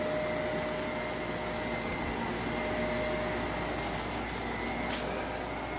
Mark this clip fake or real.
real